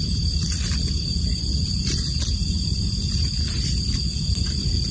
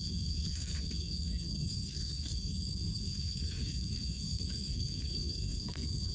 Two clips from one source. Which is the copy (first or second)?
second